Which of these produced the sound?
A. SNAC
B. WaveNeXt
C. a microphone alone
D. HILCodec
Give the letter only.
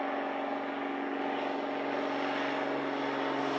C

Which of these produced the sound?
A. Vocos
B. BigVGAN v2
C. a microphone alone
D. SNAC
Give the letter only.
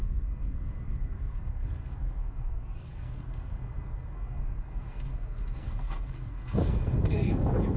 D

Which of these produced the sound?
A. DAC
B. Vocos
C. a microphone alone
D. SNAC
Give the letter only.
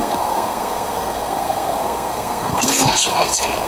D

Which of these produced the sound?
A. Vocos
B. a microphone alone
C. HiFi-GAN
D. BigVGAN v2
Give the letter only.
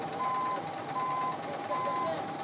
B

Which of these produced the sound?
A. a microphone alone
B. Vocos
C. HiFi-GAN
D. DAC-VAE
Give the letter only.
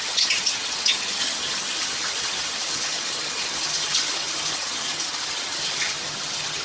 C